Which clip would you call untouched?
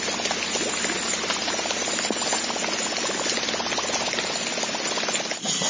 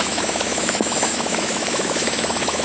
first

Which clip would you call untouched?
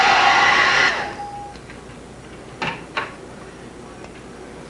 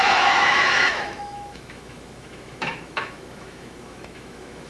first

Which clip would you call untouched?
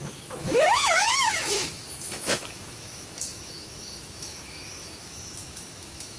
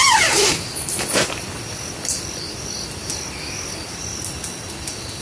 second